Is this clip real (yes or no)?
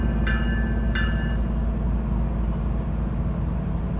yes